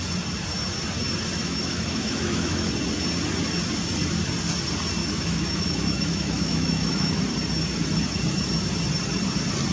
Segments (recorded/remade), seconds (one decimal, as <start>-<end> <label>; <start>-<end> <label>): 0.0-1.4 recorded; 1.4-2.7 remade; 2.7-5.0 recorded; 5.0-7.2 remade; 7.2-9.7 recorded